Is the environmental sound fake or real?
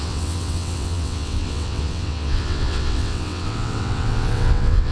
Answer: fake